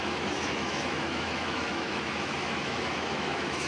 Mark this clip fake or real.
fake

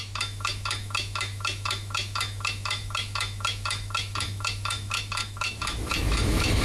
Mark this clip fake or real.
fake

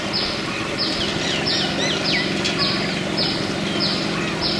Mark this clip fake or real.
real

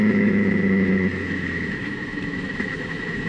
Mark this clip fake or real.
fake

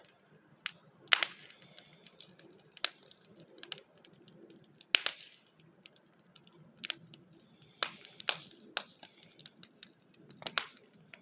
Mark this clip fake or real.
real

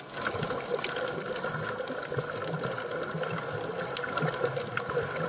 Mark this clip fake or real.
real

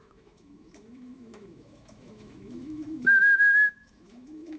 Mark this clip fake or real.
fake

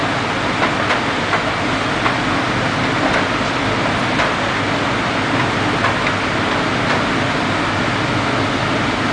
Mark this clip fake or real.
real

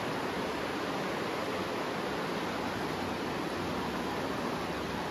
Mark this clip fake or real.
real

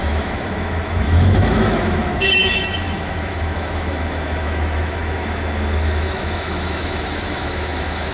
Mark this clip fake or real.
fake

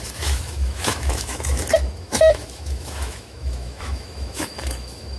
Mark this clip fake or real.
fake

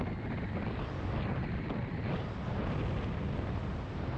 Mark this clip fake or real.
real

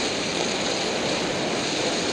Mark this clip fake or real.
real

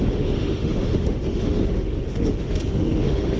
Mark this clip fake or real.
fake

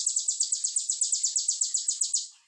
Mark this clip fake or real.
real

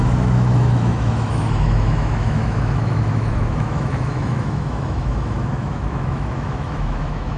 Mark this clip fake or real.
fake